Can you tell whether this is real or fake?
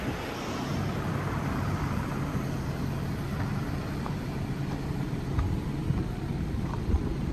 fake